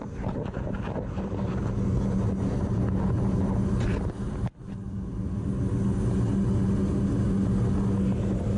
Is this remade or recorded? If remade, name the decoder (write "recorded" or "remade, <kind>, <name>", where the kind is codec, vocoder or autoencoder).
recorded